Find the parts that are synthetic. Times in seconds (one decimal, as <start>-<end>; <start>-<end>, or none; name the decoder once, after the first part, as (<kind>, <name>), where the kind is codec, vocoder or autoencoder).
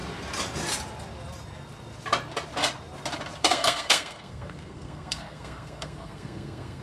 3.4-6.8 (codec, SNAC)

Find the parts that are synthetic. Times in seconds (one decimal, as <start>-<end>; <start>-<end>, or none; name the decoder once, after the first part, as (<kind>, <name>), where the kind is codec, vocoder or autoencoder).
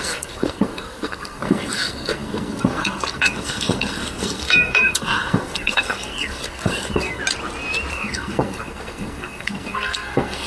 0.0-7.2 (codec, SNAC); 7.9-10.5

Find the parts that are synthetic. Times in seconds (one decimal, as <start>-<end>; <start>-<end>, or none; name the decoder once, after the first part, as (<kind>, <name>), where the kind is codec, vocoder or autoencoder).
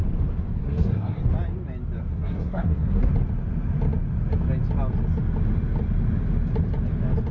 0.6-1.2 (codec, SNAC); 2.1-3.1